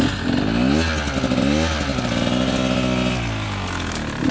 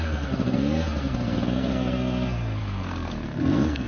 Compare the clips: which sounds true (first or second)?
first